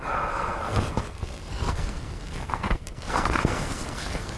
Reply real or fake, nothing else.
fake